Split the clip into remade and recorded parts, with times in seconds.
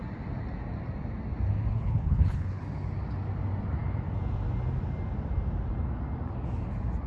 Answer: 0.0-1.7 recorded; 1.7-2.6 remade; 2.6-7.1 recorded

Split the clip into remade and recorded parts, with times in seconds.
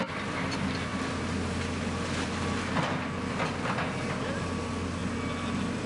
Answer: 0.0-5.9 recorded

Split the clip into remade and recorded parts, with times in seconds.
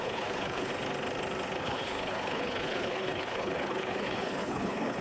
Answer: 0.0-0.7 remade; 0.7-1.6 recorded; 1.6-5.0 remade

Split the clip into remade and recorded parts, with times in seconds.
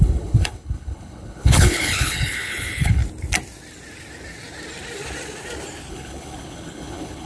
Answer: 0.0-3.0 remade; 3.0-5.9 recorded; 5.9-7.3 remade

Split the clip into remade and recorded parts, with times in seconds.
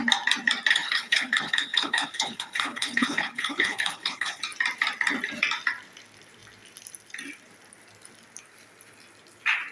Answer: 0.0-0.7 recorded; 0.7-4.4 remade; 4.4-9.7 recorded